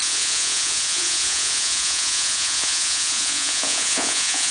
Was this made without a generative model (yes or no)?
no